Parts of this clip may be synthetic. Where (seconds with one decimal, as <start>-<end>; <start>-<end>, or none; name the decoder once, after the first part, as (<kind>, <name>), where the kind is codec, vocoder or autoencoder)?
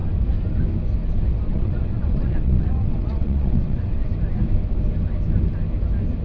1.5-4.1 (vocoder, WaveNeXt)